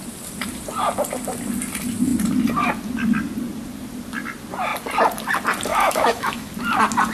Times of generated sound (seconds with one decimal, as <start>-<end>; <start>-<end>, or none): 5.7-6.5